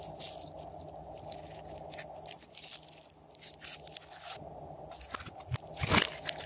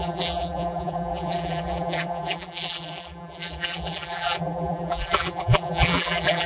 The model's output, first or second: second